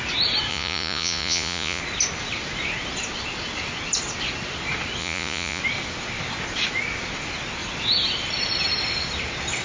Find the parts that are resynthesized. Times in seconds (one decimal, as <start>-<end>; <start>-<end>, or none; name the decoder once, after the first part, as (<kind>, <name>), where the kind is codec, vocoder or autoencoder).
0.5-1.8 (vocoder, Vocos); 5.0-5.6